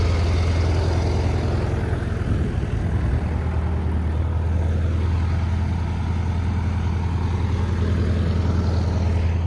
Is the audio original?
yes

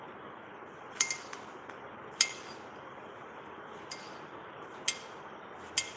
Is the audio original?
yes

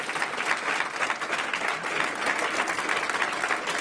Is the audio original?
yes